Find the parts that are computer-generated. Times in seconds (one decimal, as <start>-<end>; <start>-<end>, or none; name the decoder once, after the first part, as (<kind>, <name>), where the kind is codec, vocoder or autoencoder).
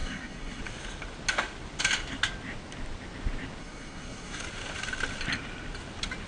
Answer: 0.0-0.6 (codec, SNAC); 3.6-4.4